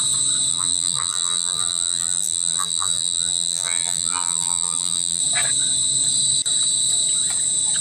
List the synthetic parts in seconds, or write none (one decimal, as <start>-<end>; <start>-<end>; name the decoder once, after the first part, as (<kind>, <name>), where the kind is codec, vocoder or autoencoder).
0.5-5.2 (vocoder, BigVGAN v2)